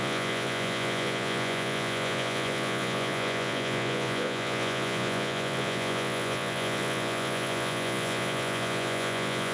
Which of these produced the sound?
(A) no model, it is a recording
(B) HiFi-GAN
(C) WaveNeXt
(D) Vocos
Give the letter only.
D